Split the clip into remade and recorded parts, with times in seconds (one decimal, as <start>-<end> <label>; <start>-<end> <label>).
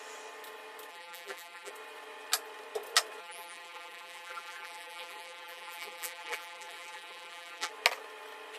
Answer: 0.0-0.9 recorded; 0.9-1.7 remade; 1.7-3.2 recorded; 3.2-7.7 remade; 7.7-8.6 recorded